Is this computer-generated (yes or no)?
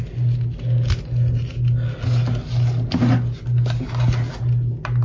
no